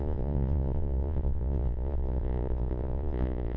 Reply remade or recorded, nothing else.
remade